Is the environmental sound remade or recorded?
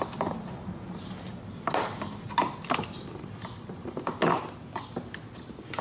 recorded